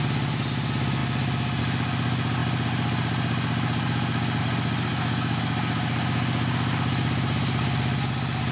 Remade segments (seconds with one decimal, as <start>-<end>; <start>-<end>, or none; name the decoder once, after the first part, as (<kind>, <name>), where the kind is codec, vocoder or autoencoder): 4.9-5.4 (autoencoder, DAC-VAE)

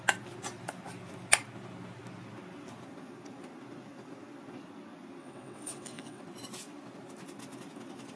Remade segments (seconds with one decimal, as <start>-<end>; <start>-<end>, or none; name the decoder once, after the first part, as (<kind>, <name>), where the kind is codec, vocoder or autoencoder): 5.2-6.2 (vocoder, WaveNeXt)

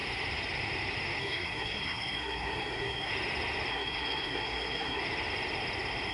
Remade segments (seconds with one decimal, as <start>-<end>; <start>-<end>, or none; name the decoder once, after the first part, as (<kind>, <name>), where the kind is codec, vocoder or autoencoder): 1.2-3.1 (codec, SNAC); 3.7-5.0

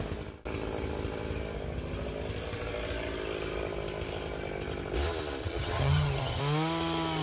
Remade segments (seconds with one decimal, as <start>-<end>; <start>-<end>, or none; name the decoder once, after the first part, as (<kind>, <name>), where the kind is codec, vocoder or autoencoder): 5.4-6.4 (vocoder, HiFi-GAN)

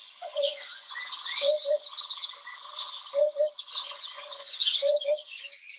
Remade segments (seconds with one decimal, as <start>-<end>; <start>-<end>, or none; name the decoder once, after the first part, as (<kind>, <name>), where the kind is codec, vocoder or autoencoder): 0.0-5.8 (vocoder, Vocos)